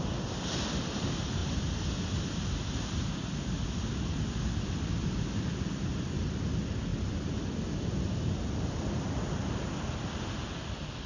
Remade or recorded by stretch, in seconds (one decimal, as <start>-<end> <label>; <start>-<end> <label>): 0.0-11.1 recorded